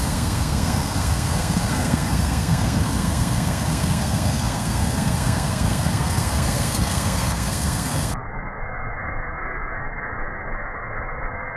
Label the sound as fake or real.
fake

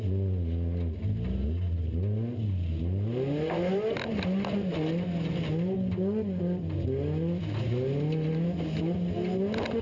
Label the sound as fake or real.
real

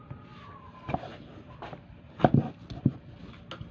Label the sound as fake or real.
real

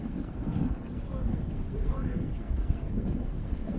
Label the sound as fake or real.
fake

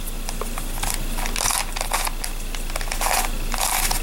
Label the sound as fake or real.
real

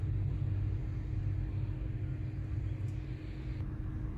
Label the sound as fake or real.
real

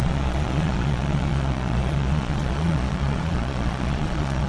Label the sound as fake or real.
fake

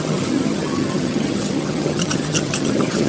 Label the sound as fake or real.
fake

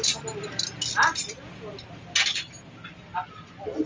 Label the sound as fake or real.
real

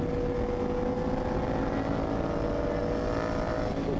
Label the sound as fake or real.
real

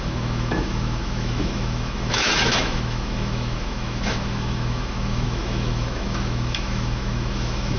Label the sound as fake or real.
fake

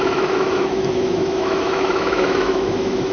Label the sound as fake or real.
fake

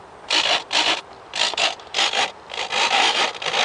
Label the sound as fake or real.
fake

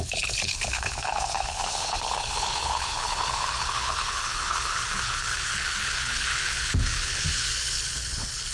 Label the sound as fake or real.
fake